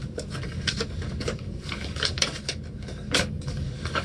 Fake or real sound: fake